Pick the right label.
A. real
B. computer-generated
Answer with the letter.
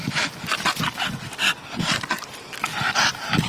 A